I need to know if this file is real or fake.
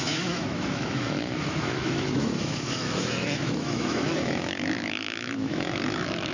fake